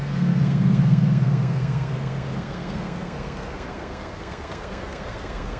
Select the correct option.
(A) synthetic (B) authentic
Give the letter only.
A